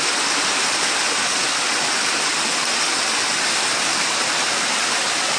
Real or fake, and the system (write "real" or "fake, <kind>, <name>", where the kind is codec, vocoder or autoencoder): real